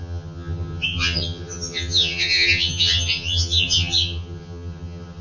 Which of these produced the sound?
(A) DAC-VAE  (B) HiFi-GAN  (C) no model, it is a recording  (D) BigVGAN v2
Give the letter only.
B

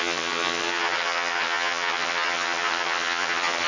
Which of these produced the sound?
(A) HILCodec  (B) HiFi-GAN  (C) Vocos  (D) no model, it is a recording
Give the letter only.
B